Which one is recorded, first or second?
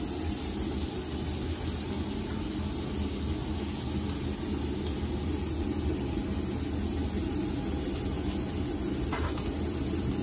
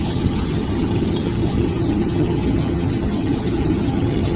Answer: first